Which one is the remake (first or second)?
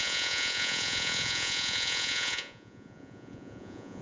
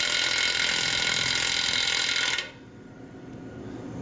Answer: first